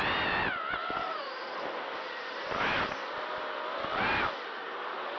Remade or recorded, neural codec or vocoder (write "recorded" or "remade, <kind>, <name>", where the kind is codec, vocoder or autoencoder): recorded